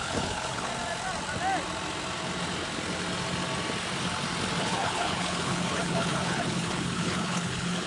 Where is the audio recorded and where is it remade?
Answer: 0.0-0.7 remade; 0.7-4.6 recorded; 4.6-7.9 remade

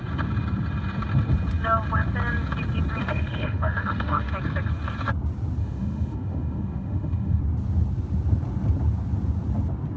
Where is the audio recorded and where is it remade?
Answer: 0.0-3.0 recorded; 3.0-4.3 remade; 4.3-5.6 recorded; 5.6-7.4 remade; 7.4-10.0 recorded

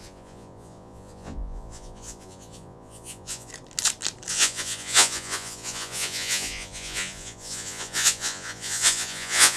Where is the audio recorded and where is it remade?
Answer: 0.0-3.5 remade; 3.5-4.3 recorded; 4.3-9.6 remade

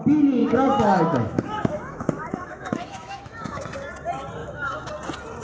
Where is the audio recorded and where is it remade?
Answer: 0.0-0.4 recorded; 0.4-3.6 remade; 3.6-4.4 recorded; 4.4-4.9 remade; 4.9-5.4 recorded

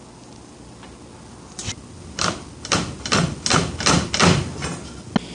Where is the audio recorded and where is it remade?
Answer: 0.0-5.3 recorded

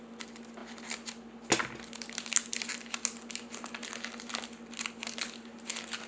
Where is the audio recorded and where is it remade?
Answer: 0.0-6.1 recorded